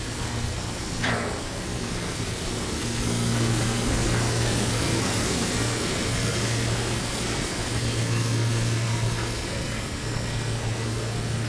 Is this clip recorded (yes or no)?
no